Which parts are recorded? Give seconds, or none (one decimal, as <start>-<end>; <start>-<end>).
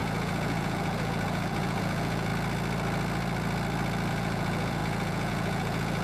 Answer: 2.3-4.1